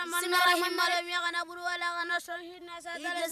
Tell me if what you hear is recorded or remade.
remade